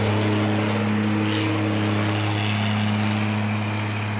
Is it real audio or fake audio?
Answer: real